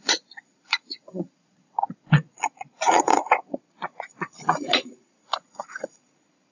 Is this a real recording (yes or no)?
no